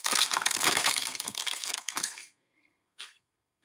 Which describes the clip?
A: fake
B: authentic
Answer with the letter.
A